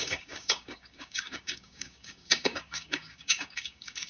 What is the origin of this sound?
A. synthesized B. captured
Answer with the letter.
A